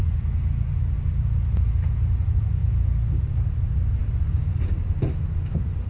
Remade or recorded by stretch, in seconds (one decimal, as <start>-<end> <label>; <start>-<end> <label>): 0.0-2.2 recorded; 2.2-2.6 remade; 2.6-3.2 recorded; 3.2-5.9 remade